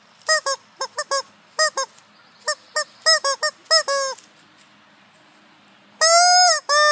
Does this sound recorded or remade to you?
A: recorded